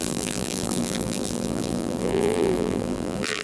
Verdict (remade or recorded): remade